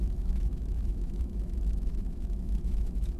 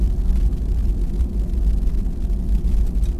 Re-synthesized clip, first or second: first